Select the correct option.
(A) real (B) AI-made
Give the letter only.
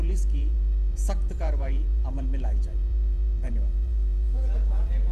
B